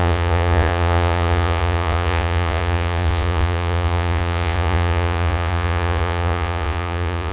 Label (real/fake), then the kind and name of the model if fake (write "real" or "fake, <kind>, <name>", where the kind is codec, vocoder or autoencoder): fake, vocoder, Vocos